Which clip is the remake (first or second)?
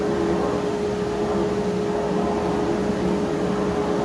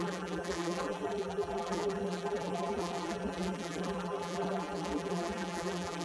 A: second